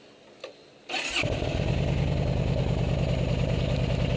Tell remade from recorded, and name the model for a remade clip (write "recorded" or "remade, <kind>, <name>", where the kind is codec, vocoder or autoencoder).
recorded